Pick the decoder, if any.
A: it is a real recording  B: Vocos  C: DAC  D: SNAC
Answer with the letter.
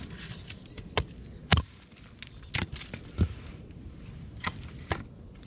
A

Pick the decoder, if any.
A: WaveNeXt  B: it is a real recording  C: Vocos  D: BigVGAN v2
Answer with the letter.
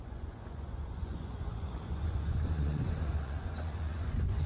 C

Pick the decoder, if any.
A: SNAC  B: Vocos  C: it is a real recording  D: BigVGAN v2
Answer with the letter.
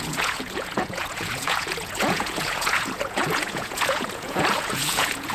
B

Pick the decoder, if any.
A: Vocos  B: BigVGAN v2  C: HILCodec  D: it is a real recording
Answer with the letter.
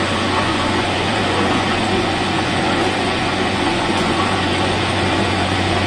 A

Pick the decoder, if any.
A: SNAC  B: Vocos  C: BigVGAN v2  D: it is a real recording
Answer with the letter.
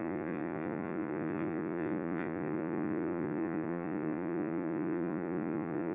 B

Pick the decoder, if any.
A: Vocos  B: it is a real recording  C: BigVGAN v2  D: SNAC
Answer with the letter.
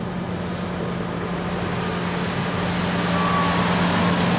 B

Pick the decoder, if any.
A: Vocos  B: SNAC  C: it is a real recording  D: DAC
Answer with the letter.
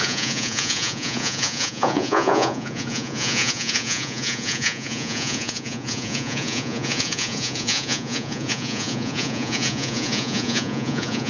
A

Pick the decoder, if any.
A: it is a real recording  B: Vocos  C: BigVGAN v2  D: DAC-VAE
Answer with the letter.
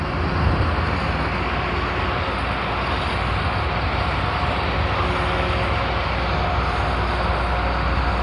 A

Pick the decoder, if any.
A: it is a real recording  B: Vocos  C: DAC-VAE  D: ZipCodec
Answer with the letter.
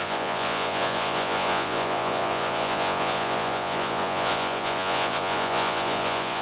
B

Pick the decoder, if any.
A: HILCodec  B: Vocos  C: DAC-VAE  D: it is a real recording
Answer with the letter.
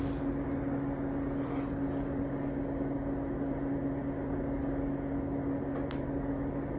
D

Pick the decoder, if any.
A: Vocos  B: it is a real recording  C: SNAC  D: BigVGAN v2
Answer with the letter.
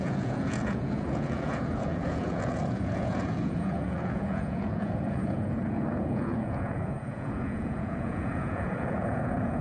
A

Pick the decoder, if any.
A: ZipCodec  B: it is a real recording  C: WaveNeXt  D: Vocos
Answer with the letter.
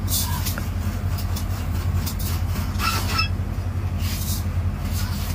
B